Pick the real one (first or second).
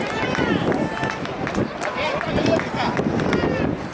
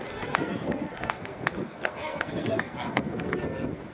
first